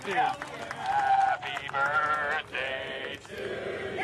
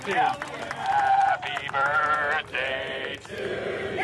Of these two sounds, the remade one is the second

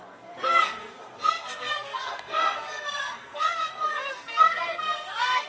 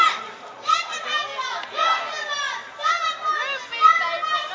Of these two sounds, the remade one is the first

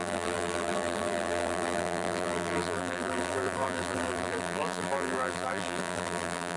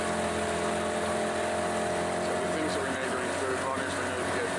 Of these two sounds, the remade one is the first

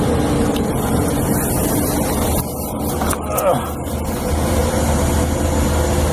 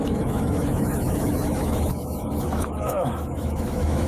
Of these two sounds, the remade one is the second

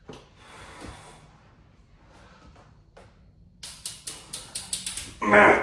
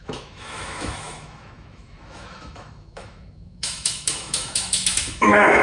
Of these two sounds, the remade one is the second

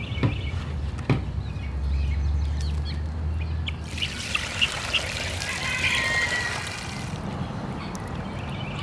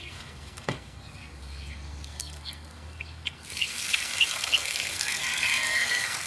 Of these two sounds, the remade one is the second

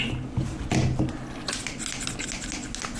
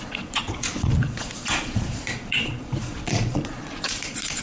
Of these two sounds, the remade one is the second